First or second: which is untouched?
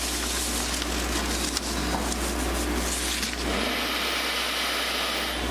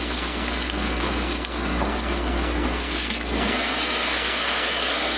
first